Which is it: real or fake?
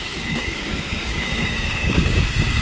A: fake